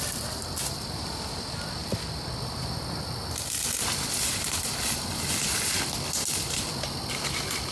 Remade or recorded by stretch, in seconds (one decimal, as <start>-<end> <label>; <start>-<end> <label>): 0.0-7.7 recorded